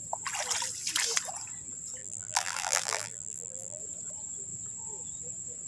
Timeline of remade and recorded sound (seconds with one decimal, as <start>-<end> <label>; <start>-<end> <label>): 0.0-2.0 recorded; 2.0-3.8 remade; 3.8-5.7 recorded